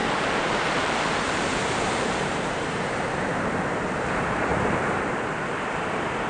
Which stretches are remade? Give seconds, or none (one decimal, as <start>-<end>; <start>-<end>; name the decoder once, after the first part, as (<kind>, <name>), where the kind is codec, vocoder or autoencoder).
0.0-3.8 (vocoder, BigVGAN v2); 4.5-5.1